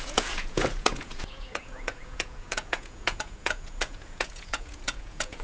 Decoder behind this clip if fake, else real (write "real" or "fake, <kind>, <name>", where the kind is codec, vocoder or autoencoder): fake, vocoder, Vocos